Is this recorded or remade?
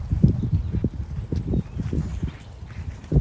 remade